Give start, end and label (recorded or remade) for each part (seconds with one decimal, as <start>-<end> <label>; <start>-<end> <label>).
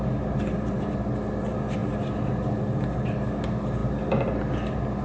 0.0-5.0 recorded